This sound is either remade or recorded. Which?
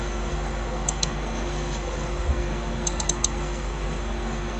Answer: remade